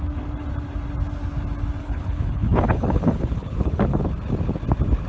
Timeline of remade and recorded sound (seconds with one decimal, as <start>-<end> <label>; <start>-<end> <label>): 0.0-1.8 recorded; 1.8-4.0 remade; 4.0-5.1 recorded